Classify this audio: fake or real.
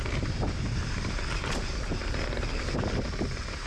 real